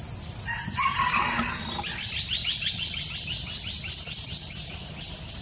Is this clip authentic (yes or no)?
yes